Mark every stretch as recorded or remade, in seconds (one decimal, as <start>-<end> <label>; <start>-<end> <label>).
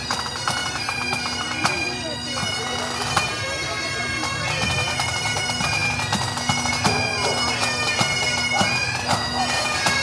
0.0-10.0 recorded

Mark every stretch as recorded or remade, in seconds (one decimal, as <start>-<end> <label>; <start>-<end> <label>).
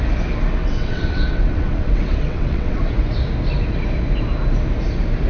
0.0-0.6 recorded; 0.6-2.8 remade; 2.8-5.3 recorded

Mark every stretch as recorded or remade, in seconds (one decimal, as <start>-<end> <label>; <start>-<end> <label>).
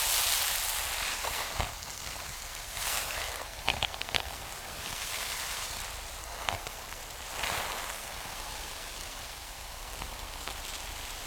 0.0-1.1 recorded; 1.1-5.8 remade; 5.8-6.2 recorded; 6.2-7.0 remade; 7.0-7.9 recorded; 7.9-10.5 remade; 10.5-11.3 recorded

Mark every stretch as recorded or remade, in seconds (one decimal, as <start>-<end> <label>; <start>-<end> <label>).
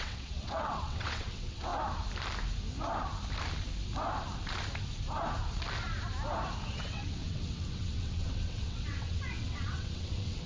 0.0-1.7 remade; 1.7-6.7 recorded; 6.7-10.5 remade